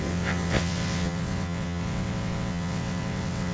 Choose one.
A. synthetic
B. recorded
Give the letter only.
A